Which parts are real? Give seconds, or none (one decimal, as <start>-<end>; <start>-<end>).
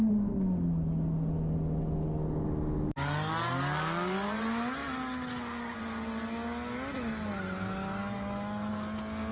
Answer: 0.0-8.0; 8.7-9.3